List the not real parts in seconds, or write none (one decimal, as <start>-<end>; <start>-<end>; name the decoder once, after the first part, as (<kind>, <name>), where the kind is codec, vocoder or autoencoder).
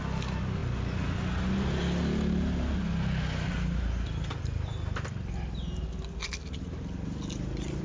none